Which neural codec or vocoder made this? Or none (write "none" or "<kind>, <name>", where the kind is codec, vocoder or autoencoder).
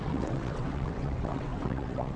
vocoder, WaveNeXt